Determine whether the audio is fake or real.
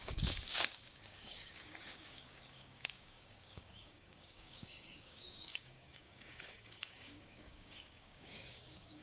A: fake